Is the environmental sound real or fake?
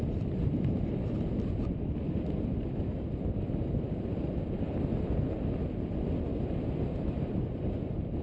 real